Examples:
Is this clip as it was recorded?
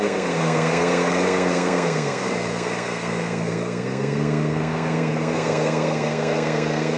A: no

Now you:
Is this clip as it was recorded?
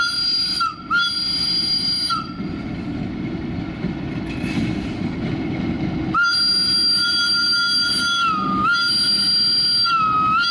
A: yes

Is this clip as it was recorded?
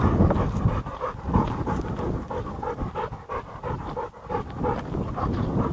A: yes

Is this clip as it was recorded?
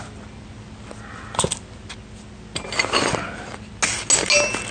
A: yes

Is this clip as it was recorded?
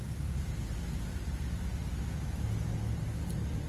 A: yes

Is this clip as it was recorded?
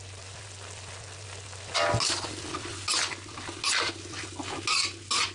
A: yes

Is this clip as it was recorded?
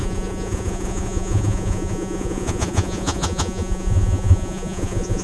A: no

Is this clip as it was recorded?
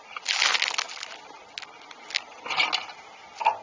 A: yes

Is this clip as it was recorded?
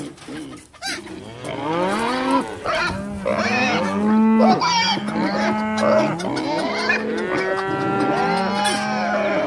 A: yes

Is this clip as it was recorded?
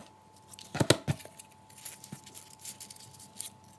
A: yes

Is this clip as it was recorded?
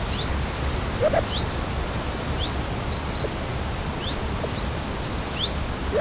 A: yes